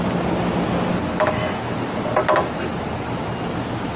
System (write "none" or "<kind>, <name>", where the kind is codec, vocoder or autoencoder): none